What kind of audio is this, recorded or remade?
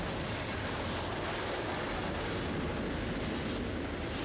recorded